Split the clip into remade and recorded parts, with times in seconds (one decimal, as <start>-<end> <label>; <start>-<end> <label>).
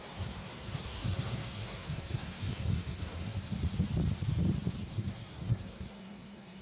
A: 0.0-3.6 remade; 3.6-4.8 recorded; 4.8-6.6 remade